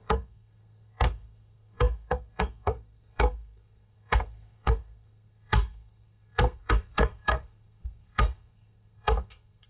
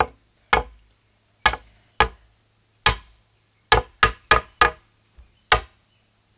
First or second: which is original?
second